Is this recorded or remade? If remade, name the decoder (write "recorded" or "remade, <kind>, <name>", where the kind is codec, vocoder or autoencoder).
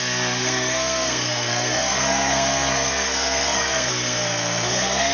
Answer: remade, codec, SNAC